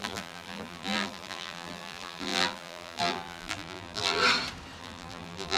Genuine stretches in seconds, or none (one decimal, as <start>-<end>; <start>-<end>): 4.2-4.8